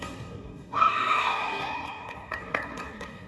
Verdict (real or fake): fake